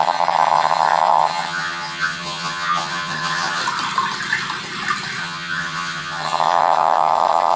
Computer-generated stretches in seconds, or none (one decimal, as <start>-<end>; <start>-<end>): 0.0-3.6; 5.2-7.6